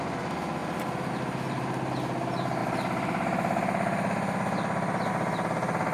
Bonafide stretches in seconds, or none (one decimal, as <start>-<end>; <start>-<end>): 0.0-5.9